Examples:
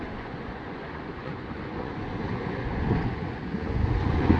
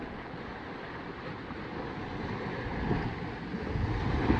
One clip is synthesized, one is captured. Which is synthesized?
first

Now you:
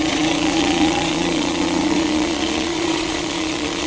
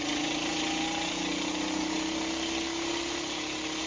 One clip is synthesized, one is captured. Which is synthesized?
first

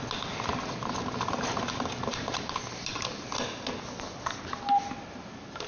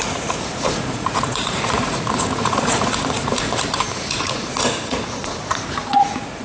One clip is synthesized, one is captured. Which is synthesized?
second